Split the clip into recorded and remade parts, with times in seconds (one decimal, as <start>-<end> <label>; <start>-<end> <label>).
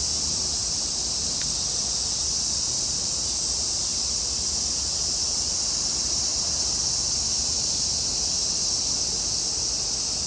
0.0-3.9 remade; 3.9-4.9 recorded; 4.9-6.3 remade; 6.3-10.3 recorded